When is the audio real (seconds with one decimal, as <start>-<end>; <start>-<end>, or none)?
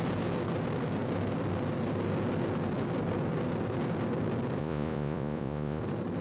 0.0-4.6; 5.8-6.2